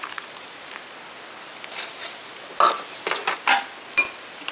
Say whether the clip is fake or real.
real